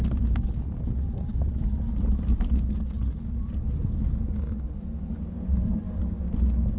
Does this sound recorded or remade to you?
recorded